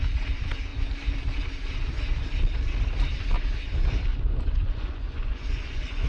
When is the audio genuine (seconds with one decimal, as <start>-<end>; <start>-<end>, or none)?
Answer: 0.0-4.1